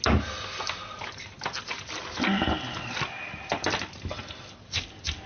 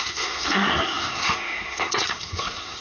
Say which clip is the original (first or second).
first